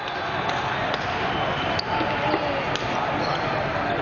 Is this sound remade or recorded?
recorded